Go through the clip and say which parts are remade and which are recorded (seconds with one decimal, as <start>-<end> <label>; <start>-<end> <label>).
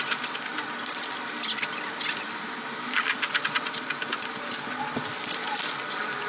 0.0-6.3 recorded